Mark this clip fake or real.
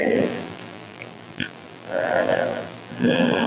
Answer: fake